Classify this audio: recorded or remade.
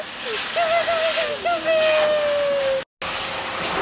recorded